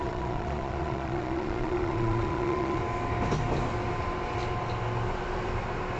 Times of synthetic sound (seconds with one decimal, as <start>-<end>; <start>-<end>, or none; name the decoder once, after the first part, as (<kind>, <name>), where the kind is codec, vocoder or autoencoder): 0.0-2.8 (vocoder, Vocos)